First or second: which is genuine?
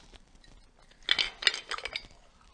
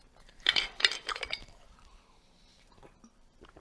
first